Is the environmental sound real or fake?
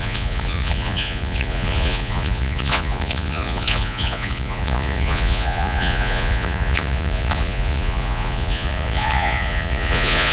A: fake